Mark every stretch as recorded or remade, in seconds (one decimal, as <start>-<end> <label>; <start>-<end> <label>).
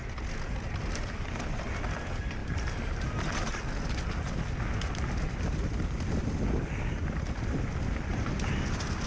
0.0-9.1 recorded